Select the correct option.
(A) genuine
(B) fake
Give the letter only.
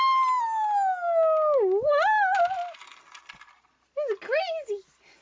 A